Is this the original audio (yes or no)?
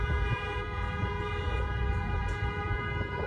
no